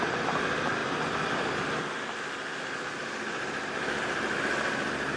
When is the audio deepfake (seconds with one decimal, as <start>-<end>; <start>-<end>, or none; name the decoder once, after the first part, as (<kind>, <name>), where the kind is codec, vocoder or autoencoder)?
none

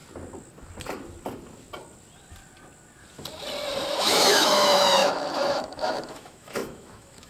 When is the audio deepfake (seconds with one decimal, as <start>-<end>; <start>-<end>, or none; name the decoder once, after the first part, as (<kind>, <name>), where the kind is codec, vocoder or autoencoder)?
3.9-7.3 (autoencoder, DAC-VAE)

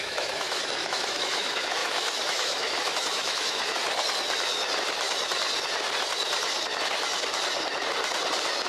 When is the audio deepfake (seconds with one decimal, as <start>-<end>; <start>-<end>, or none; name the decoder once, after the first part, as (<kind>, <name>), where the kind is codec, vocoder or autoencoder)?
0.0-3.8 (autoencoder, DAC-VAE)

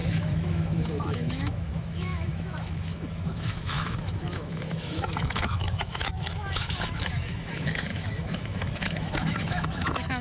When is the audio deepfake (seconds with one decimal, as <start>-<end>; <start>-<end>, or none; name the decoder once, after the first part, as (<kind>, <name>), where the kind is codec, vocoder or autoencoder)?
0.0-10.2 (autoencoder, DAC-VAE)